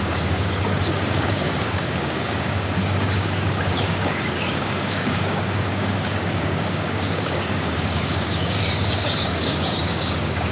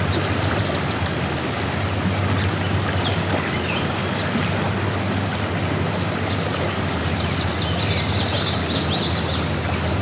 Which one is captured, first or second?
second